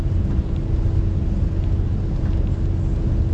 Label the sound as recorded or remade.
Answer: recorded